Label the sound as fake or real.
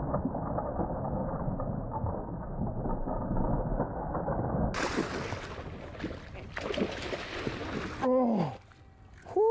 real